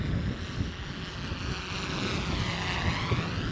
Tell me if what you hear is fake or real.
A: real